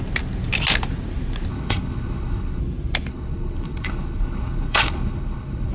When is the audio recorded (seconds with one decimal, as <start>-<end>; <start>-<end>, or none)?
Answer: 0.0-1.5; 2.6-3.1